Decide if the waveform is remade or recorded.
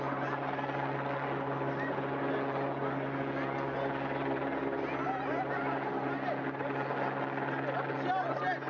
recorded